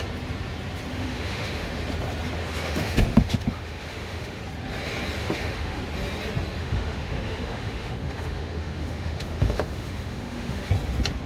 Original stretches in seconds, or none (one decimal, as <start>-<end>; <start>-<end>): 0.0-0.9; 1.8-2.4; 4.4-5.2; 5.8-6.6; 10.7-11.3